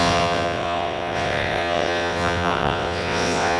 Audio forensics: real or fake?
fake